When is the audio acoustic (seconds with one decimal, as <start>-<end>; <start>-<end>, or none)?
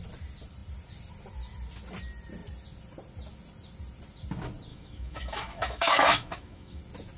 0.0-4.7; 6.8-7.2